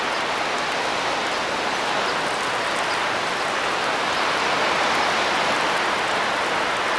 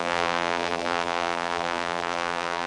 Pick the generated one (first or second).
second